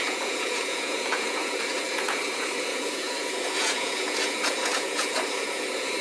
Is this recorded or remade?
remade